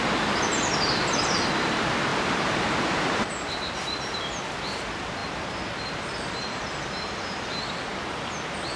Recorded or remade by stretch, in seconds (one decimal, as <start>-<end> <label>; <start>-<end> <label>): 0.0-2.1 recorded; 2.1-4.4 remade; 4.4-5.2 recorded; 5.2-7.7 remade; 7.7-8.8 recorded